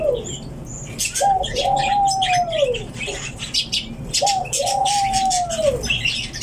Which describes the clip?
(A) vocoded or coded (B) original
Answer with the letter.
B